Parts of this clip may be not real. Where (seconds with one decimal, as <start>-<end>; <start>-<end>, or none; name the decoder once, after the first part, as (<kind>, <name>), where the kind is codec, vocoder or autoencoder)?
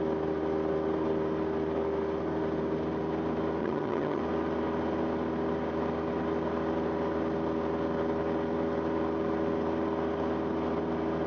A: 3.6-4.2 (vocoder, HiFi-GAN)